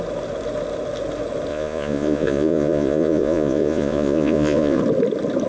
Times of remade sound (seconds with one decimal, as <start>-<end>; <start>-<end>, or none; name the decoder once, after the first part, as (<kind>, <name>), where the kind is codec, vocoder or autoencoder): 1.5-4.8 (vocoder, Vocos)